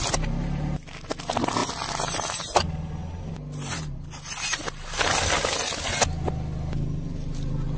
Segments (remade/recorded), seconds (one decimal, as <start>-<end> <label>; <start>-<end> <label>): 0.0-7.8 recorded